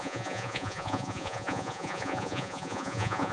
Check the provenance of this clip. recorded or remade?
remade